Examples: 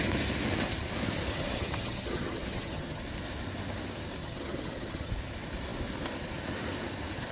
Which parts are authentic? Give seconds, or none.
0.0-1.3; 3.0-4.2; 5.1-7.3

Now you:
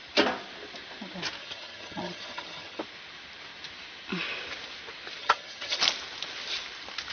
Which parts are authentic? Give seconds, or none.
0.0-1.4; 2.8-5.2; 5.8-7.1

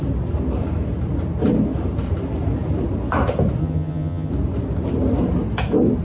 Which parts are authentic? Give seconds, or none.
0.0-3.6; 4.3-6.0

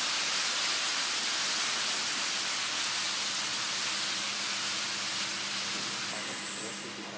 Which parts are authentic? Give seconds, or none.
0.0-7.2

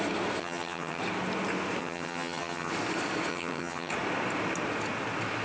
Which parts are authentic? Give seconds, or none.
0.0-0.4; 1.0-1.8; 2.7-3.3; 3.9-5.4